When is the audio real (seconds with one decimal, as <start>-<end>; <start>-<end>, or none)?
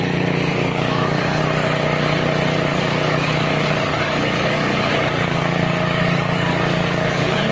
0.0-0.5; 1.4-2.7